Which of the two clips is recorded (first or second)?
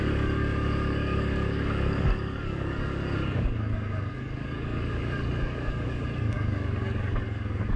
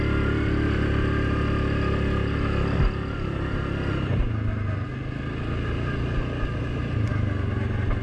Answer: second